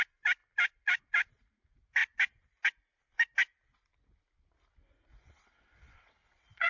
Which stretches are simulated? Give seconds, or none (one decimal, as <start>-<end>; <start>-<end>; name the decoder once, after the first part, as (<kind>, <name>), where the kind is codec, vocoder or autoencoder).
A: 5.1-6.7 (vocoder, WaveNeXt)